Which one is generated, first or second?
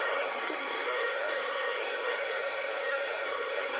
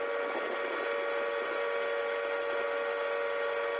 first